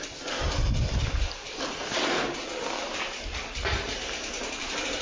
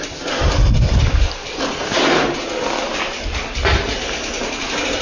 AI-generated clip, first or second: first